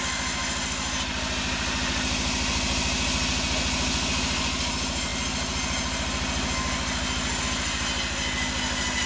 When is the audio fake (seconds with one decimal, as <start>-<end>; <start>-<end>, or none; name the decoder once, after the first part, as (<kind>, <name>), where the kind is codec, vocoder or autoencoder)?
none